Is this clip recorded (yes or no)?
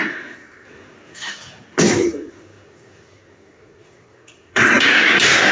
no